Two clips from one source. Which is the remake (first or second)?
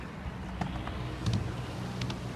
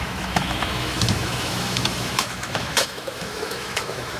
second